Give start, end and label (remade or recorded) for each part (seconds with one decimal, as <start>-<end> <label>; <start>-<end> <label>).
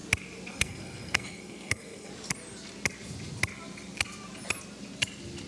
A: 0.0-0.5 recorded; 0.5-2.1 remade; 2.1-5.5 recorded